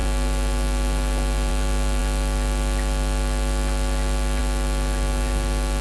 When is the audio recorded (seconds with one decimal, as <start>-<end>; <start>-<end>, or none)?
0.0-5.8